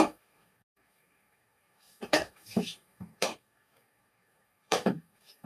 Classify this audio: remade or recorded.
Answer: remade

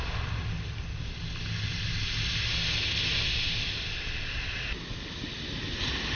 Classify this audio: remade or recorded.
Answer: recorded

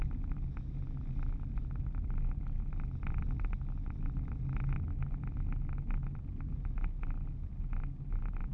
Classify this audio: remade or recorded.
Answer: recorded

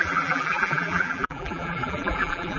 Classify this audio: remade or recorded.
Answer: remade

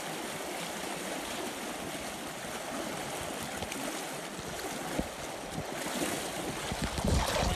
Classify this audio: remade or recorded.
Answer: recorded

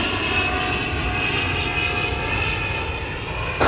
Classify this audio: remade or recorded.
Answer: recorded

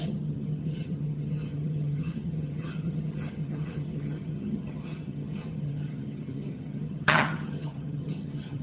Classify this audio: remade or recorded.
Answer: remade